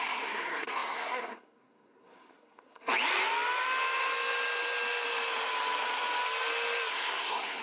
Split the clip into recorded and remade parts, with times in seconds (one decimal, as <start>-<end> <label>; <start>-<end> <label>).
0.0-2.9 remade; 2.9-6.9 recorded; 6.9-7.6 remade